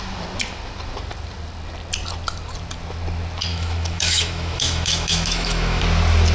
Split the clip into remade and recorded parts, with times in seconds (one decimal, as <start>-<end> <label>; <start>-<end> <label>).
0.0-3.5 recorded; 3.5-5.8 remade; 5.8-6.3 recorded